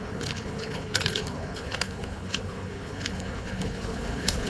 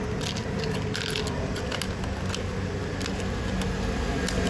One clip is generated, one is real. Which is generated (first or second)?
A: first